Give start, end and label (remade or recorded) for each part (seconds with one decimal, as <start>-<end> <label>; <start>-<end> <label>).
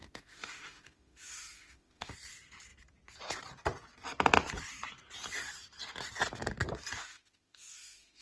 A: 0.0-2.1 remade; 2.1-7.0 recorded; 7.0-8.2 remade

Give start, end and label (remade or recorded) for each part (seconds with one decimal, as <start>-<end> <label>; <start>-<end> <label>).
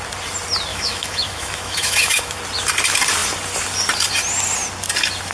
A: 0.0-0.7 recorded; 0.7-2.4 remade; 2.4-5.3 recorded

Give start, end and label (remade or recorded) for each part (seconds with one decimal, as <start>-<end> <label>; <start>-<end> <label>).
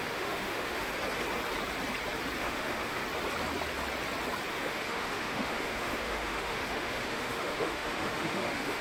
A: 0.0-0.9 remade; 0.9-2.4 recorded; 2.4-3.0 remade; 3.0-4.5 recorded; 4.5-8.8 remade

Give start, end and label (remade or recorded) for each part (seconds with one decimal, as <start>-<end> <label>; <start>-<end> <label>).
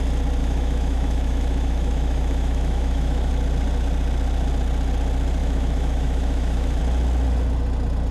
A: 0.0-0.4 recorded; 0.4-3.3 remade; 3.3-5.4 recorded; 5.4-6.8 remade; 6.8-8.1 recorded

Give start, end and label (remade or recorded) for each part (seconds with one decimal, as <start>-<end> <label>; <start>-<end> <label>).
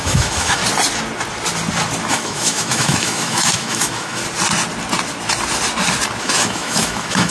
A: 0.0-0.6 remade; 0.6-2.1 recorded; 2.1-4.2 remade; 4.2-6.2 recorded; 6.2-7.3 remade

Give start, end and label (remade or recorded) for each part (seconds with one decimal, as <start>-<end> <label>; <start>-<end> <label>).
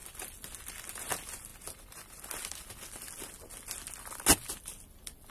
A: 0.0-5.3 recorded